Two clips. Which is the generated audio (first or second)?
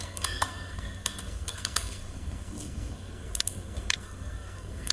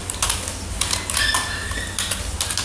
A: first